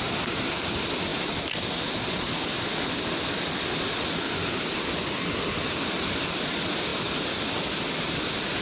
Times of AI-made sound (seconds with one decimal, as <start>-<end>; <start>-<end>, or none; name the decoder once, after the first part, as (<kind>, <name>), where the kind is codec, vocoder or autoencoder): none

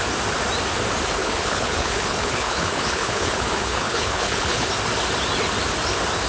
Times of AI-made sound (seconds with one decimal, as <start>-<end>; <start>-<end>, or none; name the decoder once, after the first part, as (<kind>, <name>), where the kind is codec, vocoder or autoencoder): 1.2-4.7 (codec, HILCodec)

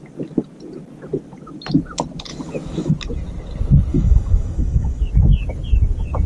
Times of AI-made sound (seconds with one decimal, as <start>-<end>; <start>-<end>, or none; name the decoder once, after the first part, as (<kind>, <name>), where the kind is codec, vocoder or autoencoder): 2.3-2.9 (autoencoder, DAC-VAE); 3.9-5.0

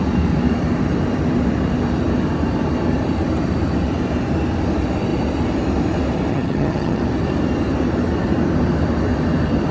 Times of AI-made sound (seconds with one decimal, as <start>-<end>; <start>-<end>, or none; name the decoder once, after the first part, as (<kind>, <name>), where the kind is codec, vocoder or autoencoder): 6.3-7.0 (vocoder, HiFi-GAN)

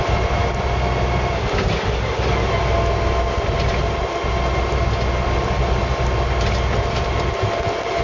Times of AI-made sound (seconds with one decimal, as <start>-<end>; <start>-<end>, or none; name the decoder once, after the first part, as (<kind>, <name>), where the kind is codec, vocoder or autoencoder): none

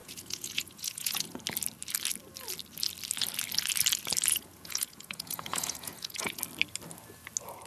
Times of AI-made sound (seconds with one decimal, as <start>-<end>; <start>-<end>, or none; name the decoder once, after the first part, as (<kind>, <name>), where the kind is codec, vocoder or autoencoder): 0.0-1.4 (vocoder, Vocos); 4.3-6.4

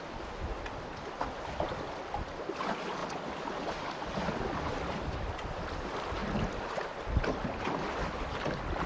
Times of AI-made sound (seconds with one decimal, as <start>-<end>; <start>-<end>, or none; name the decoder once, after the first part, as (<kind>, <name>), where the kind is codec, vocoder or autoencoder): none